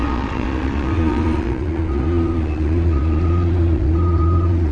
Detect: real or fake fake